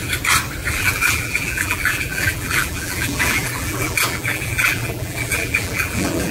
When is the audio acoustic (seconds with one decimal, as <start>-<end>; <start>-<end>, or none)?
0.0-0.7